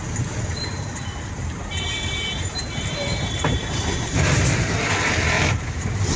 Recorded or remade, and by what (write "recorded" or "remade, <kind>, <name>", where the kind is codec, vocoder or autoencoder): remade, vocoder, BigVGAN v2